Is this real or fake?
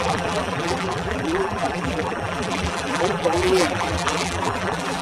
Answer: fake